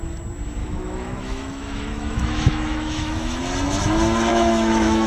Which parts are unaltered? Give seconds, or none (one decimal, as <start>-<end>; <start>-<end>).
0.0-0.6; 3.4-4.3